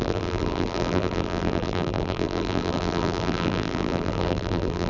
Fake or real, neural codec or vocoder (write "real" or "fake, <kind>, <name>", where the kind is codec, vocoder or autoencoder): fake, vocoder, BigVGAN v2